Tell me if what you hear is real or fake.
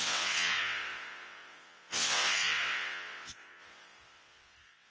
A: fake